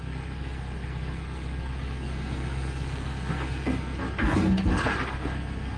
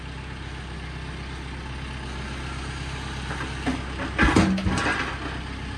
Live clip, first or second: second